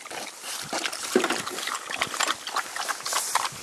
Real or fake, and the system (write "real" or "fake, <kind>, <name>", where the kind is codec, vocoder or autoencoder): real